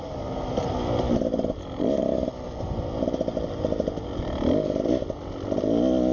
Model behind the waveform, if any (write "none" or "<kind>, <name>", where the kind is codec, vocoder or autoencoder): none